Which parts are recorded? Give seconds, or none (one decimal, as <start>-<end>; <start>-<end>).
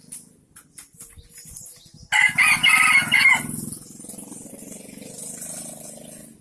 0.0-6.4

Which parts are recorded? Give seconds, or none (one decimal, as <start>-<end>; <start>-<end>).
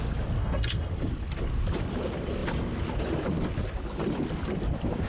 0.0-0.4; 0.9-5.1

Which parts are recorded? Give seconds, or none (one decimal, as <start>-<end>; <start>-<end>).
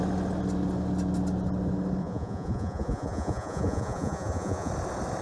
0.0-2.0; 4.7-5.2